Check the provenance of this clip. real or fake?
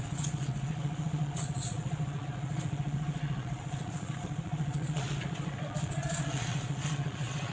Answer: fake